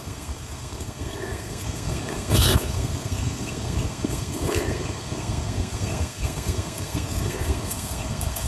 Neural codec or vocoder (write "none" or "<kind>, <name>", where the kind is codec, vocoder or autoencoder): codec, SNAC